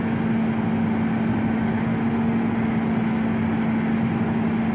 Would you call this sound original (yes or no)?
yes